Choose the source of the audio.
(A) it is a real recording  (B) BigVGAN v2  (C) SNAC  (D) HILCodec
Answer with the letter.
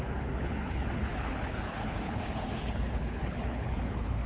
D